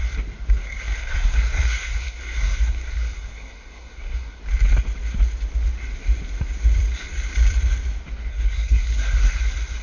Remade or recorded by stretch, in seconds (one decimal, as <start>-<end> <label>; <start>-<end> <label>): 0.0-0.6 recorded; 0.6-4.4 remade; 4.4-8.3 recorded; 8.3-9.4 remade; 9.4-9.8 recorded